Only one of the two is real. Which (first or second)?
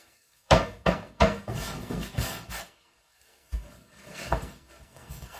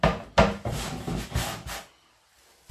second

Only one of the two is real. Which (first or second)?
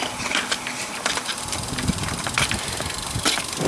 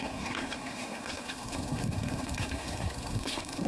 first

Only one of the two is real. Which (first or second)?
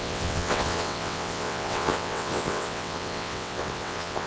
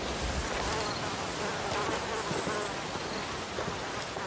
second